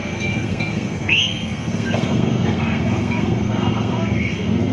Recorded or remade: remade